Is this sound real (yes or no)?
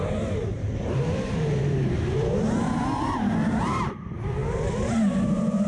no